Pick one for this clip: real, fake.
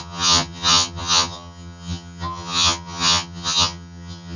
fake